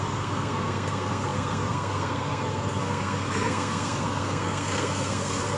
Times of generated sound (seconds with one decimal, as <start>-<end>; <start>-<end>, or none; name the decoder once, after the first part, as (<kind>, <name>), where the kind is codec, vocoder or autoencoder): 0.0-5.6 (codec, SNAC)